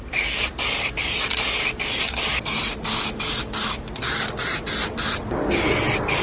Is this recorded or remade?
recorded